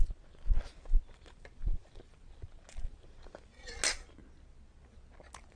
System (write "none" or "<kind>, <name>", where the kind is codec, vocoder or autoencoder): none